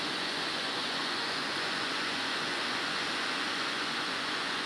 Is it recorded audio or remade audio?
remade